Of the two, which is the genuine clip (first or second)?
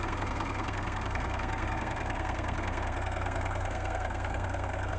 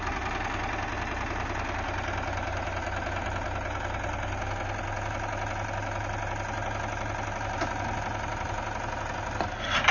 second